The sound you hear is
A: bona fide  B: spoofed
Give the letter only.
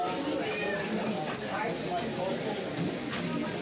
A